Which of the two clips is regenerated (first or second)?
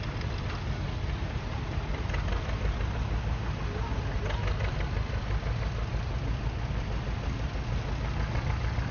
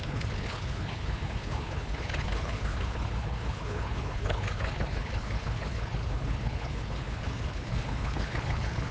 second